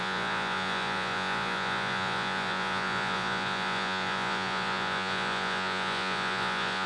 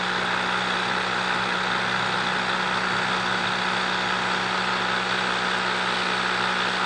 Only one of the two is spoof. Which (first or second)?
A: first